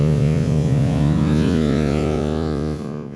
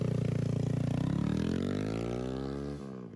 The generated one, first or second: first